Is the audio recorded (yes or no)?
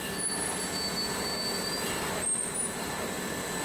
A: yes